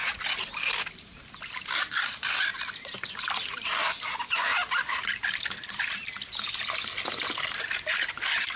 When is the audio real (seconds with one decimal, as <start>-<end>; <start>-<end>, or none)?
0.0-8.6